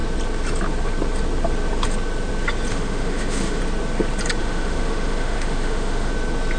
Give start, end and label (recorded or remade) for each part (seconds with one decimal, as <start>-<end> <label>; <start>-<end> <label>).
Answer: 0.0-2.7 recorded; 2.7-3.6 remade; 3.6-4.4 recorded; 4.4-6.1 remade; 6.1-6.6 recorded